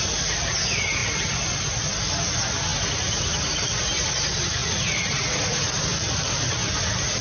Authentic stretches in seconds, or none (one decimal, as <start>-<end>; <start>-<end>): 0.0-4.6; 5.7-7.2